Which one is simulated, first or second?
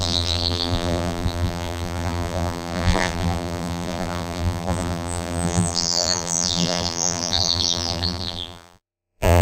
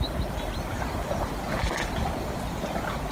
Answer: first